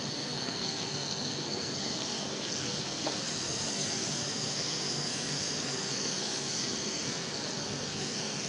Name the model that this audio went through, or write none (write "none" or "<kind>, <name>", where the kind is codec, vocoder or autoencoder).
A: codec, SNAC